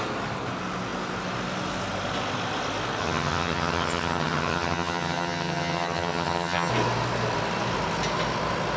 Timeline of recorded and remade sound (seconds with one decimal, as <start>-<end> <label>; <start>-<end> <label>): 0.0-3.0 recorded; 3.0-6.7 remade; 6.7-8.8 recorded